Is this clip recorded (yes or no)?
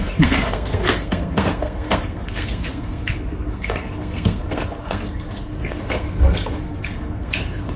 no